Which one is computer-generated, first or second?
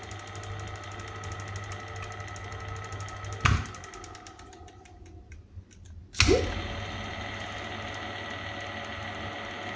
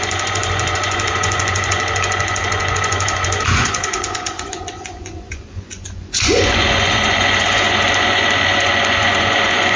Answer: second